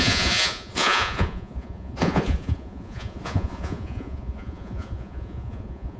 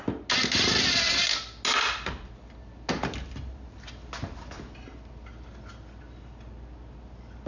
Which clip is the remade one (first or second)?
first